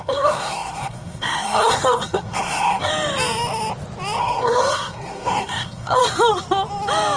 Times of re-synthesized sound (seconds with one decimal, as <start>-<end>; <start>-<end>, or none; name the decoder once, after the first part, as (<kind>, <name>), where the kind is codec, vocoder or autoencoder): 0.0-2.9 (codec, SNAC); 4.2-6.0